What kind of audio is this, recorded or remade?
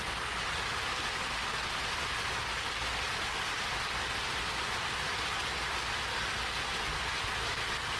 recorded